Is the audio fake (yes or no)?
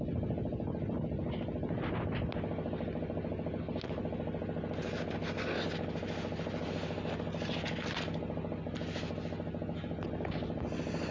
no